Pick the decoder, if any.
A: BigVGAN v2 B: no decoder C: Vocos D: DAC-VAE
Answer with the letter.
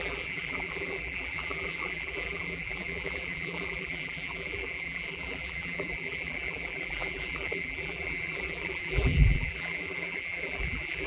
A